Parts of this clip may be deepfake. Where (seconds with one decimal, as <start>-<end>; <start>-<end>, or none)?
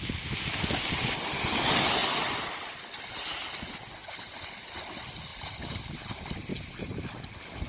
4.0-4.8; 5.3-6.1